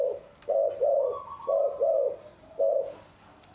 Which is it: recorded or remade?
recorded